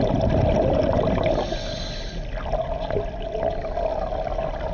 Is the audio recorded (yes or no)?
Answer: yes